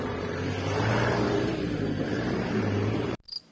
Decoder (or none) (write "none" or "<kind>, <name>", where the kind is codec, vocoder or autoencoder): vocoder, BigVGAN v2